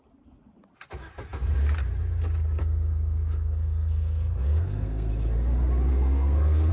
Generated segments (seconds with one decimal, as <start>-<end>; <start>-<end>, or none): 2.6-5.1; 5.9-6.7